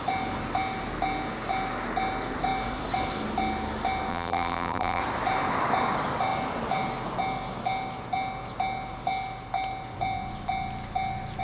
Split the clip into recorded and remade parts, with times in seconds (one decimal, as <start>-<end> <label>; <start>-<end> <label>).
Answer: 0.0-4.1 recorded; 4.1-5.0 remade; 5.0-11.4 recorded